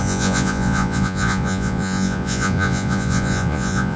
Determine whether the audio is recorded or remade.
remade